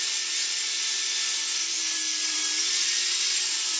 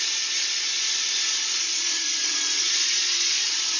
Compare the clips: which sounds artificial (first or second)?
second